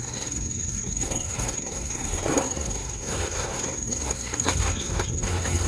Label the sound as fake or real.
fake